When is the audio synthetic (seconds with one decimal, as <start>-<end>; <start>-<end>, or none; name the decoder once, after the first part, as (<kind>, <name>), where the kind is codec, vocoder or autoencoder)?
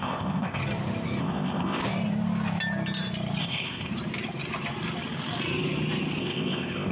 0.0-0.6 (codec, ZipCodec); 1.2-1.8; 3.4-3.9; 6.2-6.9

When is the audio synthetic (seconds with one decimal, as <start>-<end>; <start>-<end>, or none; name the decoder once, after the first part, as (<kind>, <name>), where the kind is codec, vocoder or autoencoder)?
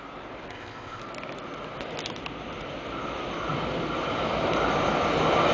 0.5-1.0 (codec, ZipCodec)